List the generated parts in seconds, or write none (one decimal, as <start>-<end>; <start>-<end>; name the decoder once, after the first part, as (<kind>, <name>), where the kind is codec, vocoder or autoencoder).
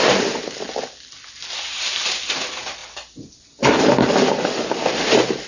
none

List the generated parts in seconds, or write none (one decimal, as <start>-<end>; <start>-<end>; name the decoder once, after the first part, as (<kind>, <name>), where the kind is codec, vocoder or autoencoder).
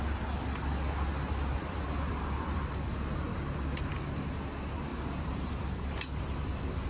4.9-6.2 (vocoder, BigVGAN v2)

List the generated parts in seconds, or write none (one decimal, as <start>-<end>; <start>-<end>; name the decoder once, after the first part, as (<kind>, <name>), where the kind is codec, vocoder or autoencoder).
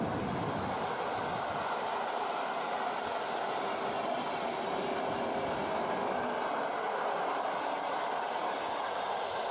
none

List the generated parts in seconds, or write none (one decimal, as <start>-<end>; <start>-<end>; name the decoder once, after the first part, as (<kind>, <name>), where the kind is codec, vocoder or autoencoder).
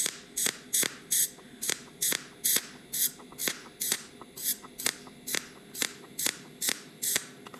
none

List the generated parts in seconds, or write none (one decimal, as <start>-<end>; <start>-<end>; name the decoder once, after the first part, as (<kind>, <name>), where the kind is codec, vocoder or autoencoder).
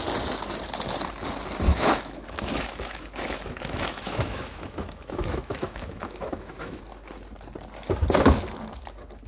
1.7-6.8 (autoencoder, DAC-VAE)